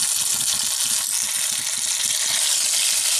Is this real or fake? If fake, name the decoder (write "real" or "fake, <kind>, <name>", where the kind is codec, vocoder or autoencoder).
real